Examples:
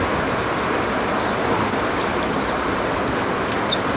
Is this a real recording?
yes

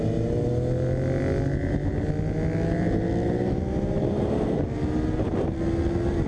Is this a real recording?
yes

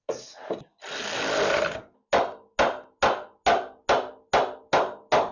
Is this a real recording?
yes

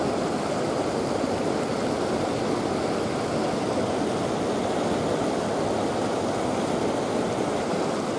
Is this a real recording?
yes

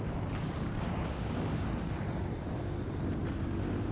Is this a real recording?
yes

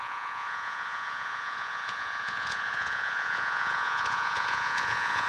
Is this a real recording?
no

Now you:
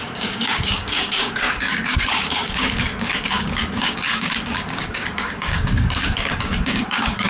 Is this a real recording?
no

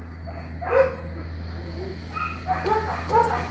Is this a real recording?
yes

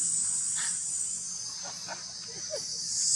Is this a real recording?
yes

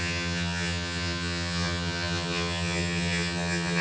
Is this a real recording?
no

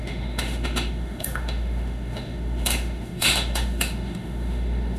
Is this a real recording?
no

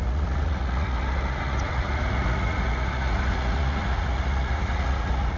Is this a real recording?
no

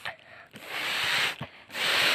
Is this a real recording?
yes